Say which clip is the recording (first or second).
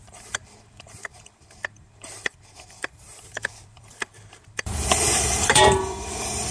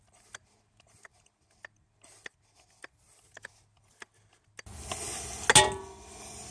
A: second